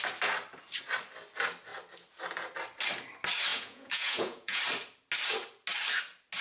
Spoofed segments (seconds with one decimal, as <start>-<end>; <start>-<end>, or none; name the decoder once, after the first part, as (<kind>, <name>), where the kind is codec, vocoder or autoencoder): 3.5-4.6 (vocoder, Vocos)